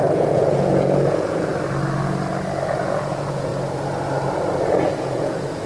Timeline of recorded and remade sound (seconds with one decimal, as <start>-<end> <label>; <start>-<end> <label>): 0.0-1.5 remade; 1.5-2.8 recorded; 2.8-3.5 remade; 3.5-4.9 recorded; 4.9-5.7 remade